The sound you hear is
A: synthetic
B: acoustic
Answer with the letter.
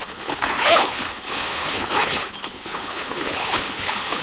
A